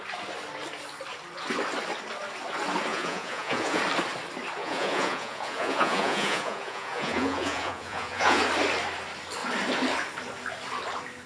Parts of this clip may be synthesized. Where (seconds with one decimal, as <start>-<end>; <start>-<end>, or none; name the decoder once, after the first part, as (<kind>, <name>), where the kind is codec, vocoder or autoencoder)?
2.9-3.8 (vocoder, Vocos); 4.6-8.4